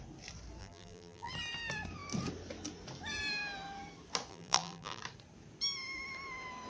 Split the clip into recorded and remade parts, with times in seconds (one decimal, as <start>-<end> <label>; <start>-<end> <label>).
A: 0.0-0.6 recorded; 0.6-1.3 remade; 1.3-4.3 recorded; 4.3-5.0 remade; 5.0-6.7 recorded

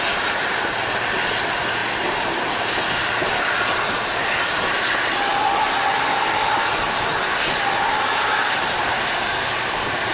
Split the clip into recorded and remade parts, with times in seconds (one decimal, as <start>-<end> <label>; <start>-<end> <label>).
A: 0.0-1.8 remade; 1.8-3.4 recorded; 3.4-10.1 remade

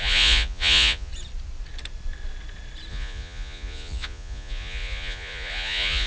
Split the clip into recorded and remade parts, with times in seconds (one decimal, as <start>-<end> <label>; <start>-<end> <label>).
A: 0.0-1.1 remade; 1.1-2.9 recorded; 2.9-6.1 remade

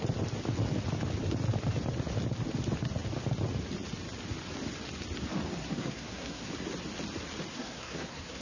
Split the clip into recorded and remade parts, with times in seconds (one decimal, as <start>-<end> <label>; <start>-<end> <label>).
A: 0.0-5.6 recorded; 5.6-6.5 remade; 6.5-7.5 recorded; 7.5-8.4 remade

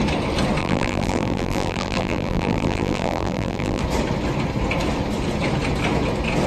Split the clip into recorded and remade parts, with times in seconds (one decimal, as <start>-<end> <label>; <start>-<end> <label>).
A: 0.0-0.6 recorded; 0.6-3.8 remade; 3.8-6.5 recorded